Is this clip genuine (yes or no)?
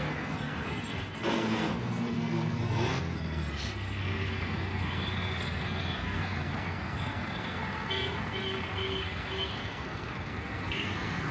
no